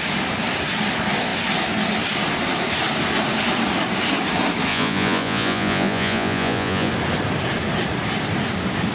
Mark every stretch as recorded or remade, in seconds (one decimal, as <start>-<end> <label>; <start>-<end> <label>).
0.0-4.7 recorded; 4.7-6.9 remade; 6.9-8.9 recorded